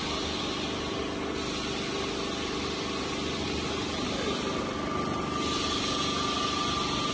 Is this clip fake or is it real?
real